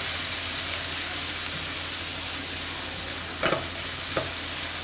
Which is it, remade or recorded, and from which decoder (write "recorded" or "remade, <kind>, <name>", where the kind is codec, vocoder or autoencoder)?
recorded